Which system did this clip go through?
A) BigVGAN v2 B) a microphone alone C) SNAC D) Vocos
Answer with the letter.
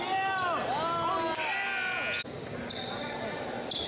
B